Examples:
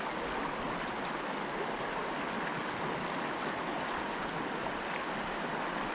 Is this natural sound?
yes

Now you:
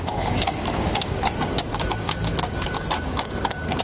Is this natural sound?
no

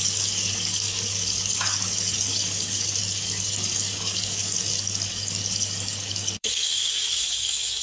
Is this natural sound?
no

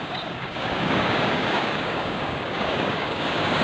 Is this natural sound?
no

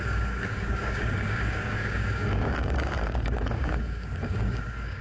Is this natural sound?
no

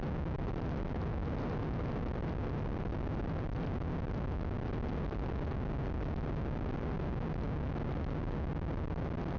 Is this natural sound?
yes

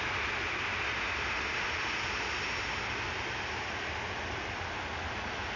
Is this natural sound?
yes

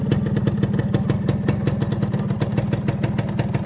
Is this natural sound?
yes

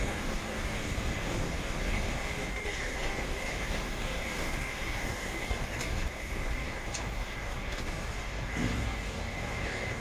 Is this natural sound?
no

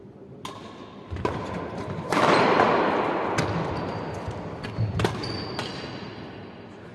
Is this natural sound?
yes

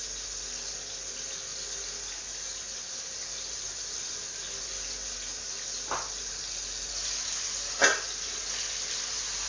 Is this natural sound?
yes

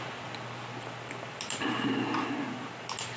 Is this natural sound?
yes